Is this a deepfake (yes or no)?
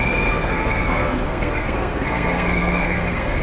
yes